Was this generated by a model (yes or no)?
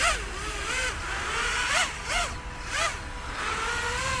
no